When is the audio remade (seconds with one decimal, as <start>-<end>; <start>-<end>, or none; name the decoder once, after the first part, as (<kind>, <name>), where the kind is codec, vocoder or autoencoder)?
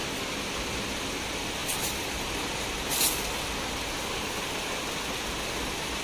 none